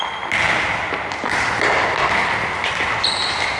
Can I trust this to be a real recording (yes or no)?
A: yes